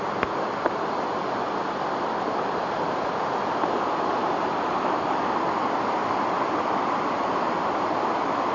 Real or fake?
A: real